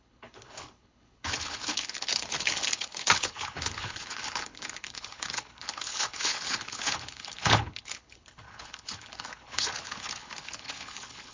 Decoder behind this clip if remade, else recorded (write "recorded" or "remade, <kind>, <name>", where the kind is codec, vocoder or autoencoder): remade, codec, HILCodec